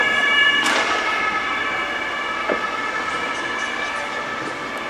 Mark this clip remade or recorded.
recorded